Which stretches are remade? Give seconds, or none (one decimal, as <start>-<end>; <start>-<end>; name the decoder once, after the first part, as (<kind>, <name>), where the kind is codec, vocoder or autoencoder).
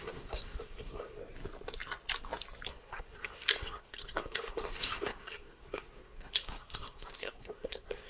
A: 0.0-1.2 (codec, SNAC); 2.7-8.1